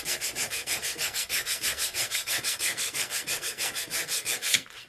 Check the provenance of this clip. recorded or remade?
remade